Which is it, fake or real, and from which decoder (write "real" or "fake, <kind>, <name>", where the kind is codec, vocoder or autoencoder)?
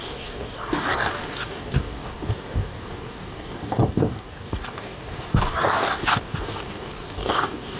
fake, codec, DAC